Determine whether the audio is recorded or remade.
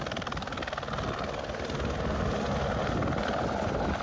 recorded